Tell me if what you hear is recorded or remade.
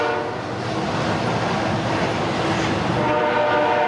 recorded